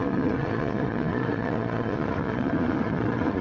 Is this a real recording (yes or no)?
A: no